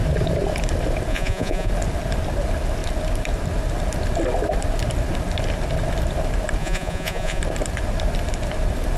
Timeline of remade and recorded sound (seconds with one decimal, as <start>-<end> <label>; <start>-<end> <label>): 0.0-1.1 recorded; 1.1-1.7 remade; 1.7-6.6 recorded; 6.6-7.4 remade; 7.4-9.0 recorded